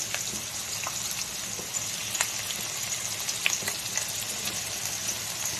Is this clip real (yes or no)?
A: yes